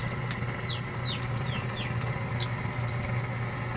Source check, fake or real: real